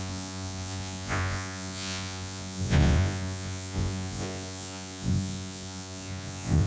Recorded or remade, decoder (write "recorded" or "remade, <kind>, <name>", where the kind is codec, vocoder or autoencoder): remade, vocoder, Vocos